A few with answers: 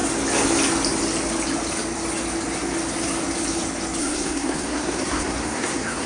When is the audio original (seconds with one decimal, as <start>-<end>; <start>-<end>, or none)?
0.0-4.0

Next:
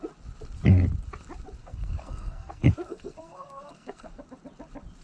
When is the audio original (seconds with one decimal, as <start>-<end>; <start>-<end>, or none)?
0.0-1.6; 4.2-5.0

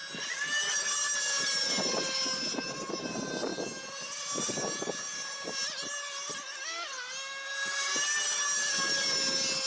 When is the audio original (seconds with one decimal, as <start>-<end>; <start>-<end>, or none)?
0.0-9.7

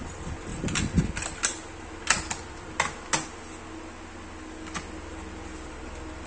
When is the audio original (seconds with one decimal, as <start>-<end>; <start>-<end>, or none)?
0.0-0.5; 1.0-6.3

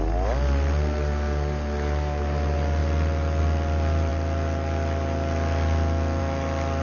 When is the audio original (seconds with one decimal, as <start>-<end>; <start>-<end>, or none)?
0.0-6.8

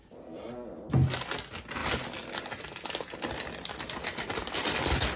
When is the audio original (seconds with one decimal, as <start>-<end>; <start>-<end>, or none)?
0.0-5.2

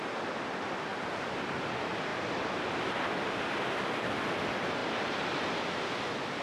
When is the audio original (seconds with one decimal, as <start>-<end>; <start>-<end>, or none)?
0.0-0.9; 1.6-4.8; 5.5-6.4

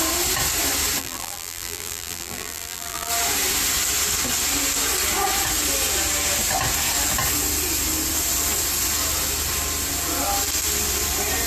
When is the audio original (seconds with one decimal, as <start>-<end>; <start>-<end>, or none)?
0.0-1.0; 3.1-11.5